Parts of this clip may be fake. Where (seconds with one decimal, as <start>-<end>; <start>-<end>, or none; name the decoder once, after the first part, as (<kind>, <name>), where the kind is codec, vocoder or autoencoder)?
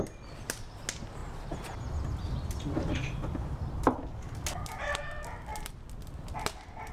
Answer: none